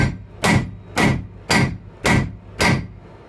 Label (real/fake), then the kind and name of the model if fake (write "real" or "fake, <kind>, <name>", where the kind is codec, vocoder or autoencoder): real